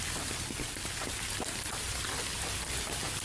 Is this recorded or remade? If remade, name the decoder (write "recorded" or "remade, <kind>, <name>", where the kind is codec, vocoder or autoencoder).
recorded